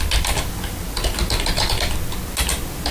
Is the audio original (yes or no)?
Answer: yes